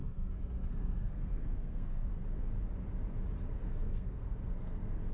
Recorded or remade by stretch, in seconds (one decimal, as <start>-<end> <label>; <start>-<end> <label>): 0.0-2.1 remade; 2.1-3.6 recorded; 3.6-5.1 remade